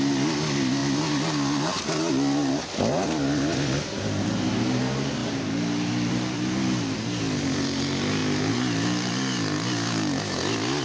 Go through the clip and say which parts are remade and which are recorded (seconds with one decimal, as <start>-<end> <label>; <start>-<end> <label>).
0.0-10.8 recorded